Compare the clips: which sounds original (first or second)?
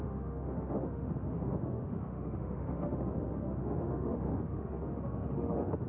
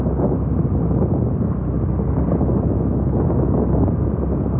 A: second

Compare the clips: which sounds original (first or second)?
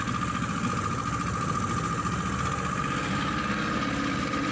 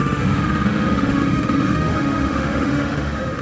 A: first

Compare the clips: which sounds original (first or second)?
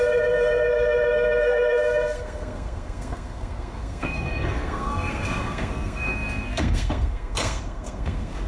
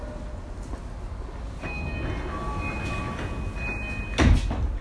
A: second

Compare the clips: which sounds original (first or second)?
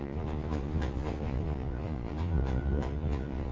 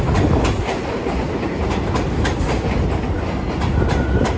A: second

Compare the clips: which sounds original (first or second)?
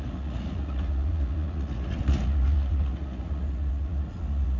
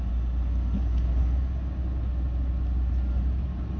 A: second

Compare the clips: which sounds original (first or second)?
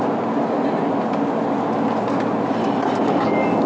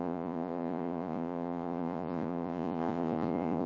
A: first